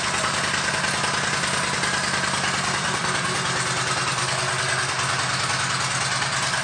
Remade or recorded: recorded